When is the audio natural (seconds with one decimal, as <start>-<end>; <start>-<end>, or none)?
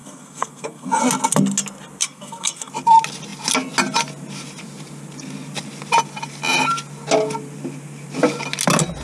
1.0-2.0; 2.7-9.0